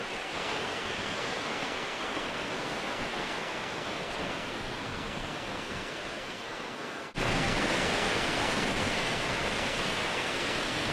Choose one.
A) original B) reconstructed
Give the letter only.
B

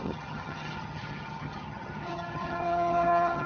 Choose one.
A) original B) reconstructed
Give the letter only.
B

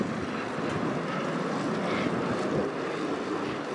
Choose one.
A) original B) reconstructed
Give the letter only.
A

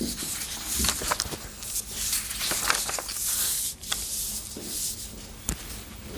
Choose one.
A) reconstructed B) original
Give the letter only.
B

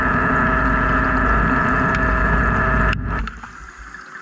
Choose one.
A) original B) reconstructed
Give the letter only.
A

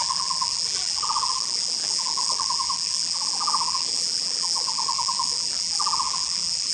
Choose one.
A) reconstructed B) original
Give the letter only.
A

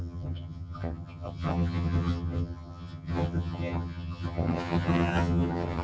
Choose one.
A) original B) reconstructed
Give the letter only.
B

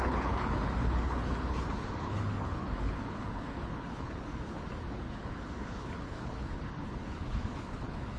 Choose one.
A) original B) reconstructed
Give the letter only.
B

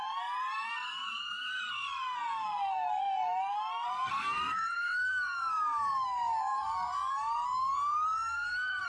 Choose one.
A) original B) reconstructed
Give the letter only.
B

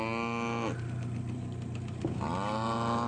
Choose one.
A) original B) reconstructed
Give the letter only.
A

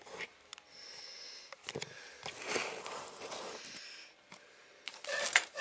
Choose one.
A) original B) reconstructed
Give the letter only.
A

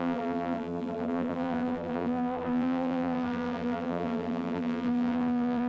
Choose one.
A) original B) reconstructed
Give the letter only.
B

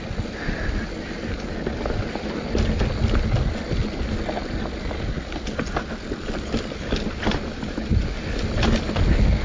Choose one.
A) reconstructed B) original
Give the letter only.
B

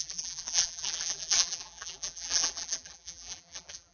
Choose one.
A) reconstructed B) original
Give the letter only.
A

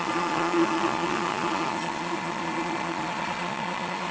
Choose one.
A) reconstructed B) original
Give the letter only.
A